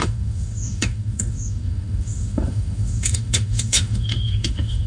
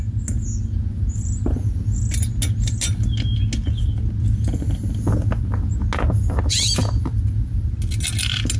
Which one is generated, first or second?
first